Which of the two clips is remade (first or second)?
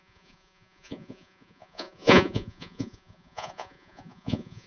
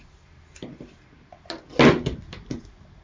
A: first